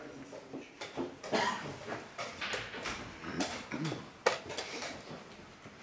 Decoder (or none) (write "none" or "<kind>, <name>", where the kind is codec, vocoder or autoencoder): none